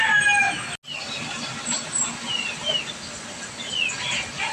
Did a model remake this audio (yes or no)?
no